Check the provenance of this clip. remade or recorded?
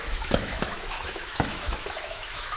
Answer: remade